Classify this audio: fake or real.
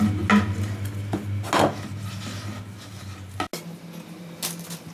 real